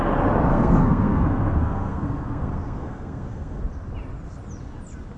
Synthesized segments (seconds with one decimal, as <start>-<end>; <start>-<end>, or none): 0.5-3.6